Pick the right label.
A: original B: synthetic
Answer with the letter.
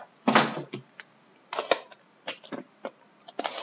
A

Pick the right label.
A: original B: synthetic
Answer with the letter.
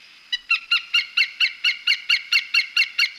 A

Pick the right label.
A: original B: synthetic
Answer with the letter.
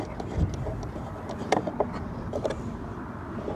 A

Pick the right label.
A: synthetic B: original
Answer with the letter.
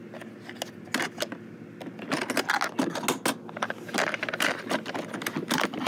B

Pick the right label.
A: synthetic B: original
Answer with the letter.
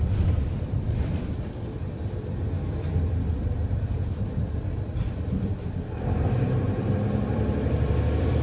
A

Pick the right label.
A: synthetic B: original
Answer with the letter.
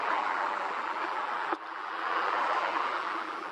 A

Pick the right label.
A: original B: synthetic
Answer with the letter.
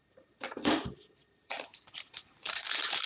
B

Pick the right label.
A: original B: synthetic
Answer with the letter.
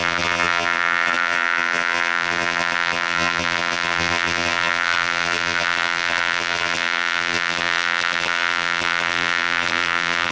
B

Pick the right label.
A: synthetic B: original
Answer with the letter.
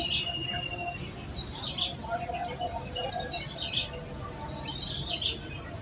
B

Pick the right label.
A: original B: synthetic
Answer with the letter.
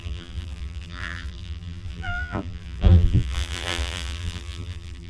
B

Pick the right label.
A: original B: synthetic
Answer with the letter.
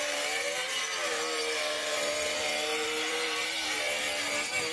B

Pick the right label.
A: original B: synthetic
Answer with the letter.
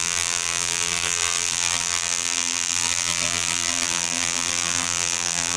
B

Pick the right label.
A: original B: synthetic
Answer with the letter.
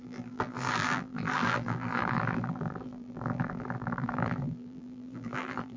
B